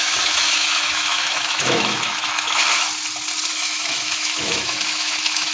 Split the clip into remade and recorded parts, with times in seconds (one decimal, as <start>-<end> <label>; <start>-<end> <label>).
0.0-2.6 remade; 2.6-3.5 recorded; 3.5-5.5 remade